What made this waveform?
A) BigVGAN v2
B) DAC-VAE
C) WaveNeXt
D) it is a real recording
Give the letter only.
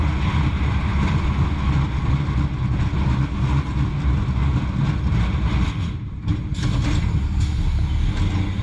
D